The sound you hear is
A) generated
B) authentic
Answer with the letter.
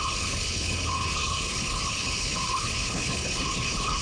A